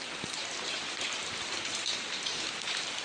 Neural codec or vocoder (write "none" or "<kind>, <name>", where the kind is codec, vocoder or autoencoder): none